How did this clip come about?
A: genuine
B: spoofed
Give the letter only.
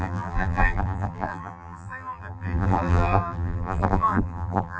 B